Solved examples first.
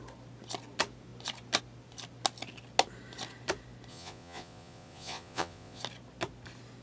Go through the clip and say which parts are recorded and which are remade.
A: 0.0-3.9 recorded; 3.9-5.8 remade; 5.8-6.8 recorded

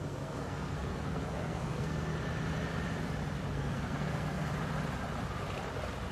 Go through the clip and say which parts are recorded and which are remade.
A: 0.0-2.1 remade; 2.1-3.5 recorded; 3.5-4.5 remade; 4.5-6.1 recorded

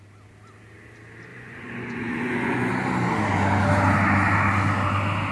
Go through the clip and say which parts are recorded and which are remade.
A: 0.0-1.3 recorded; 1.3-2.7 remade; 2.7-5.3 recorded

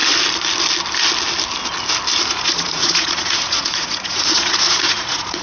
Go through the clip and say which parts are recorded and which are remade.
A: 0.0-2.3 recorded; 2.3-5.4 remade

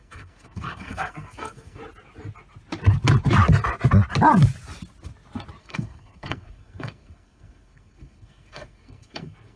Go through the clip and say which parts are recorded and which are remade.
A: 0.0-1.8 remade; 1.8-5.6 recorded; 5.6-9.6 remade

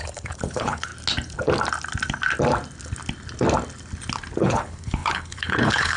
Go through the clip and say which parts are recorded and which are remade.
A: 0.0-0.9 remade; 0.9-4.4 recorded; 4.4-6.0 remade